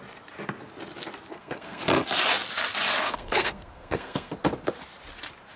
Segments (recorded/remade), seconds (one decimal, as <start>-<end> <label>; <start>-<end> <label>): 0.0-1.3 recorded; 1.3-1.8 remade; 1.8-3.0 recorded; 3.0-4.3 remade; 4.3-5.6 recorded